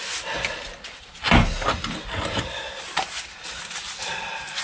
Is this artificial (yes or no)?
no